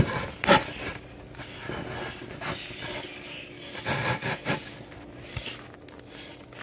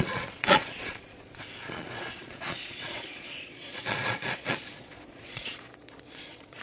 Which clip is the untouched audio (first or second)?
first